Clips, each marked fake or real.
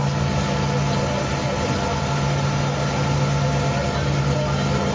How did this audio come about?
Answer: real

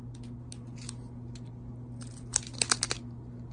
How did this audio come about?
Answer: real